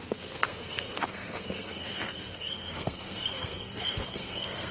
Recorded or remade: remade